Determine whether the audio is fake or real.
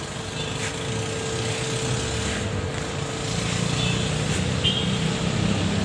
real